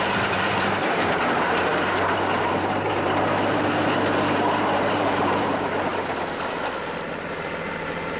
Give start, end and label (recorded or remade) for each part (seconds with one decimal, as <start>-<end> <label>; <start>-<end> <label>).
0.0-5.9 remade; 5.9-7.2 recorded; 7.2-8.2 remade